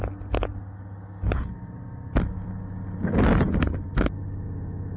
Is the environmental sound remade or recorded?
recorded